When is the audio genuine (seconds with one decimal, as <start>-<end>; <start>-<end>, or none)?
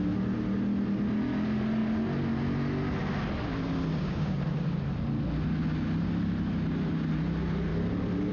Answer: 0.0-3.9; 4.4-8.3